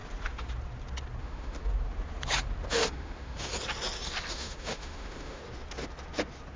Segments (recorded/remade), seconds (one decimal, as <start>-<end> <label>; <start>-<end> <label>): 0.0-1.2 recorded; 1.2-1.6 remade; 1.6-2.7 recorded; 2.7-3.5 remade; 3.5-4.3 recorded; 4.3-5.4 remade; 5.4-6.6 recorded